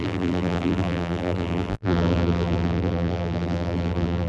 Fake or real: fake